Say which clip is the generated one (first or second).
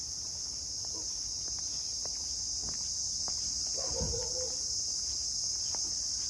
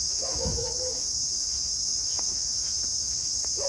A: second